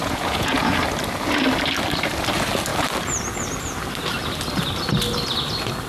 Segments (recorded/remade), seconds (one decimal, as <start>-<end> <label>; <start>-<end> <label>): 0.0-0.8 remade; 0.8-5.9 recorded